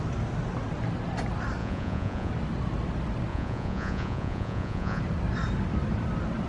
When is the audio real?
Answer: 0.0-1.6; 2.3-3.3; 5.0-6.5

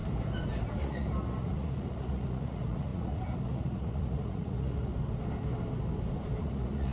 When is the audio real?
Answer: 0.0-0.7; 4.9-6.4

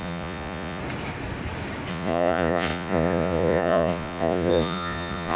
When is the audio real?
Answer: 0.8-1.9